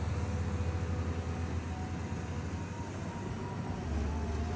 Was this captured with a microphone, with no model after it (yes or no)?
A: yes